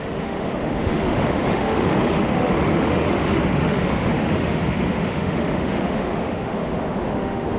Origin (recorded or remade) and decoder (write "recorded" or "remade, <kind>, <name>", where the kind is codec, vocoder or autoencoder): remade, autoencoder, DAC-VAE